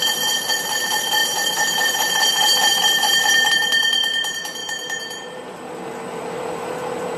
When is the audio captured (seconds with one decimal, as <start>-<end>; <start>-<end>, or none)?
0.0-1.2; 3.5-4.6; 5.7-7.2